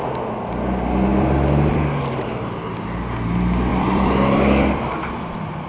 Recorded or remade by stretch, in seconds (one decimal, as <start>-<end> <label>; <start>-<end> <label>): 0.0-1.1 recorded; 1.1-2.0 remade; 2.0-3.7 recorded; 3.7-5.7 remade